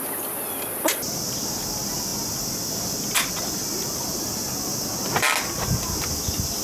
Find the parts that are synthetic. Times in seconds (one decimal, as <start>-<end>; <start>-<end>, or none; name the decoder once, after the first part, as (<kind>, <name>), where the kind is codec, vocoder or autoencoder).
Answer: none